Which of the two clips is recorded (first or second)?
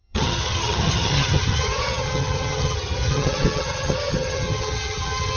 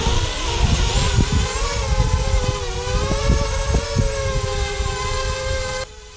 second